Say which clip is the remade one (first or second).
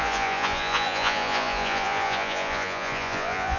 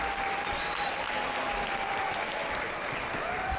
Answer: first